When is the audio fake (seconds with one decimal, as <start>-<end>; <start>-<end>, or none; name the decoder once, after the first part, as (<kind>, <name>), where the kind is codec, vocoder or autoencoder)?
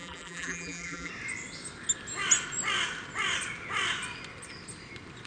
0.0-1.1 (vocoder, BigVGAN v2)